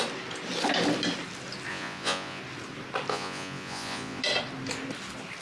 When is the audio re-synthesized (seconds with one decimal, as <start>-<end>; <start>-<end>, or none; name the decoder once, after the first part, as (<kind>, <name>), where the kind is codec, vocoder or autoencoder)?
1.7-2.4 (vocoder, Vocos); 3.1-4.2